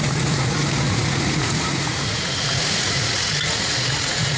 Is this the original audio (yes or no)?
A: no